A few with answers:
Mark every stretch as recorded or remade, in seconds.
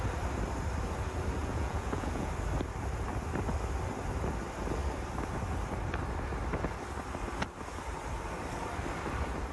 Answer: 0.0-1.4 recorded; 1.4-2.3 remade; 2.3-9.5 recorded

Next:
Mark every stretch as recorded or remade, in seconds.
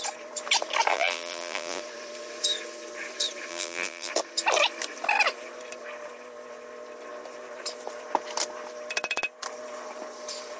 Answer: 0.0-0.9 recorded; 0.9-1.8 remade; 1.8-3.5 recorded; 3.5-4.1 remade; 4.1-10.6 recorded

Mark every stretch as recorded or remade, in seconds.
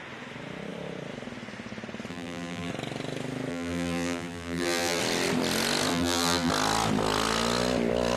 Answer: 0.0-2.1 recorded; 2.1-2.7 remade; 2.7-3.5 recorded; 3.5-5.0 remade; 5.0-5.9 recorded; 5.9-6.5 remade; 6.5-8.2 recorded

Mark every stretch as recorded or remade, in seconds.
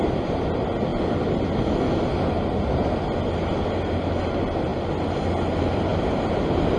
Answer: 0.0-6.8 recorded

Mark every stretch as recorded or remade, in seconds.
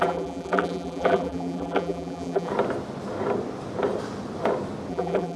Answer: 0.0-2.5 remade; 2.5-4.9 recorded; 4.9-5.4 remade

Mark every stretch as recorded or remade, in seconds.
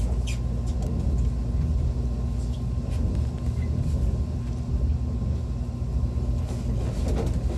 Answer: 0.0-6.4 recorded; 6.4-6.9 remade; 6.9-7.6 recorded